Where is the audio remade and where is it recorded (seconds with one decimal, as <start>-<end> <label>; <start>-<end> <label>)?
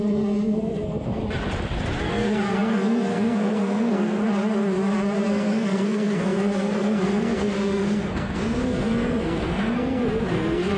0.0-1.2 remade; 1.2-2.0 recorded; 2.0-4.2 remade; 4.2-5.2 recorded; 5.2-10.8 remade